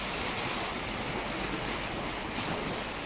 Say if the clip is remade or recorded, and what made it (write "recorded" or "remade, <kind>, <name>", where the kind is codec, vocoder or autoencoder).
recorded